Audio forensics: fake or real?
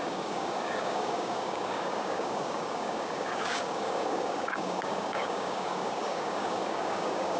fake